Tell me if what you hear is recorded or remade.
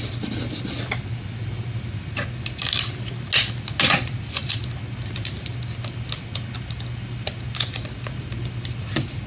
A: recorded